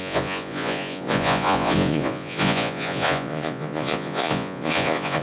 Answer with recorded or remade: remade